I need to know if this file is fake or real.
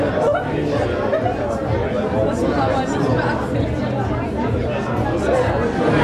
real